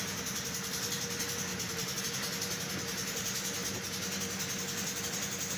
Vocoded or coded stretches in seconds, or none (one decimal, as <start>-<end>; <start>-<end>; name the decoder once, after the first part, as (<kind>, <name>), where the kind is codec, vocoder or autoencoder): 1.5-2.0 (vocoder, BigVGAN v2)